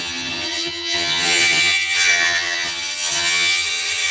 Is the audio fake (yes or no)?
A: yes